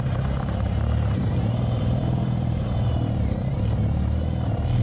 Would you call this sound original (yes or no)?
no